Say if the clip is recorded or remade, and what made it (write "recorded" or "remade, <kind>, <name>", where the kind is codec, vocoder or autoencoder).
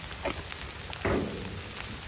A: recorded